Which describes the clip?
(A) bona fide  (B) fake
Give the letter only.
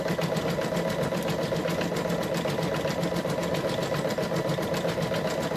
A